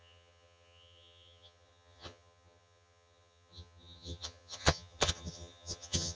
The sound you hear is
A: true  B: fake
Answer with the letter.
B